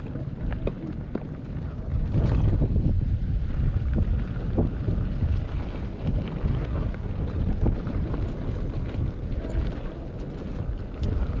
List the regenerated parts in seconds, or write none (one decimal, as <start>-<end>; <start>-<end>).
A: 6.5-7.1